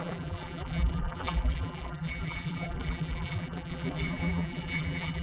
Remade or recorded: remade